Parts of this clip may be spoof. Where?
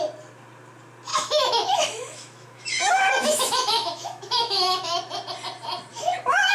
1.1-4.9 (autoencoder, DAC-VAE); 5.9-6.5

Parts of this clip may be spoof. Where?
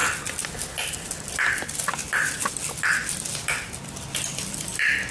none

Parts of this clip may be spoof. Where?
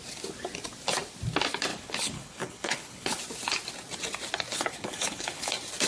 1.7-3.2 (codec, HILCodec); 4.5-5.5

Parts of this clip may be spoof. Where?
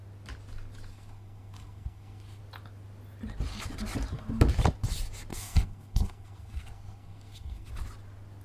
0.9-2.4 (codec, SNAC); 5.3-7.7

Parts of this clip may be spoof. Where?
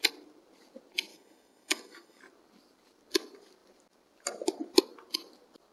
1.1-2.2 (codec, DAC)